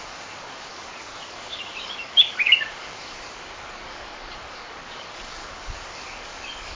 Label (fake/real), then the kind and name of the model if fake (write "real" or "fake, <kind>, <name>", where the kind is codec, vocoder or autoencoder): fake, codec, DAC